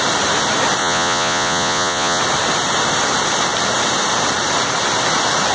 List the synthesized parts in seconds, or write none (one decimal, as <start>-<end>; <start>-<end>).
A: 0.8-2.2